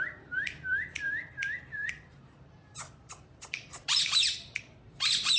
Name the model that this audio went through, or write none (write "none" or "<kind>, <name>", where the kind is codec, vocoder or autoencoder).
vocoder, BigVGAN v2